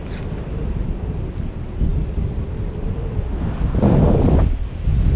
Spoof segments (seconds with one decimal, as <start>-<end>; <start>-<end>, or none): none